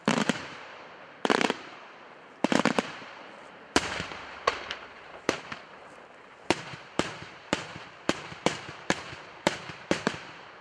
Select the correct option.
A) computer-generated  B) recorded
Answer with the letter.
A